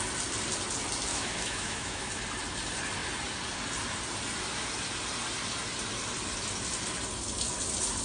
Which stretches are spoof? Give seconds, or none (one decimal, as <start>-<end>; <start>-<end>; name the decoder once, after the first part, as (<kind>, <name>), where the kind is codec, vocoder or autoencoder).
1.1-2.1 (autoencoder, DAC-VAE)